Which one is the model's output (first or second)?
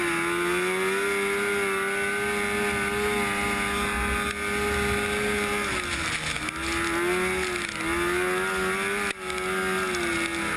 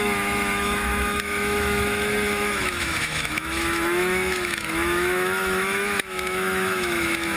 second